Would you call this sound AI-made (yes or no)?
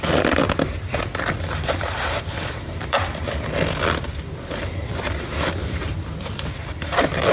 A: yes